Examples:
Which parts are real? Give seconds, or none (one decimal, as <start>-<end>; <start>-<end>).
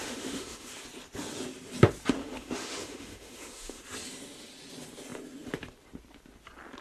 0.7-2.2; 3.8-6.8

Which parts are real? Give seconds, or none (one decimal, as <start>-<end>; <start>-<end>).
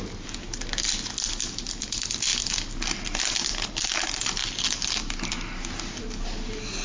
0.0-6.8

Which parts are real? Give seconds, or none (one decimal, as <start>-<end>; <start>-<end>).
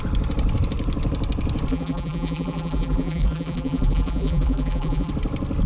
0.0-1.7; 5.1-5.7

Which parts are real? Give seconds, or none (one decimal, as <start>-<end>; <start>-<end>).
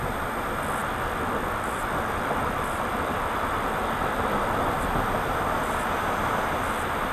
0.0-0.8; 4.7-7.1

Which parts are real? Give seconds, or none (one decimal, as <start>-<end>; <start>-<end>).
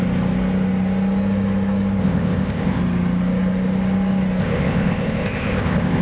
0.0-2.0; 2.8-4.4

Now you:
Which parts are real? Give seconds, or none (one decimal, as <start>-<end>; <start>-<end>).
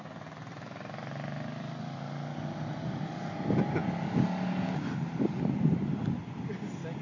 0.0-7.0